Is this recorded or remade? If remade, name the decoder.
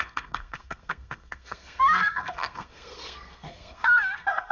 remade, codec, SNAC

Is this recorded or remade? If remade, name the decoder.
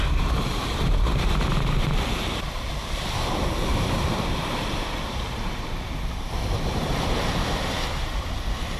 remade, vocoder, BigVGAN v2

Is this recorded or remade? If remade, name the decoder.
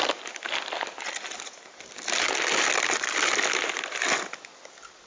recorded